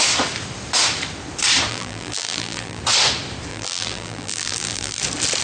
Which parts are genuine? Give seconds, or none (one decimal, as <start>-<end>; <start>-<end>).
0.0-1.7; 2.8-3.5; 5.0-5.4